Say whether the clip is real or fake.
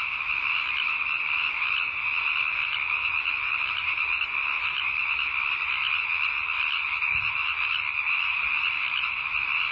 real